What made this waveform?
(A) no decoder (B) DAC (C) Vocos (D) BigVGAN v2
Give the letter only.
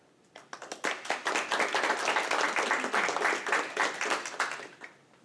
A